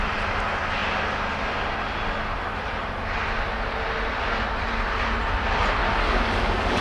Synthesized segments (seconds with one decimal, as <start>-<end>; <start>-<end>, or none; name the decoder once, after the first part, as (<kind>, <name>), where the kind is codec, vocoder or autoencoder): 5.8-6.8 (codec, DAC)